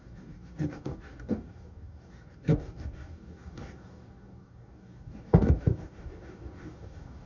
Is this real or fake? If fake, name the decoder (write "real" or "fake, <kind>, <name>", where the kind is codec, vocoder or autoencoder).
fake, codec, DAC